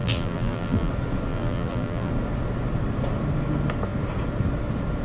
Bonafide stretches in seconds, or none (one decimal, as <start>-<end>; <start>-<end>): 0.9-1.3; 2.1-5.0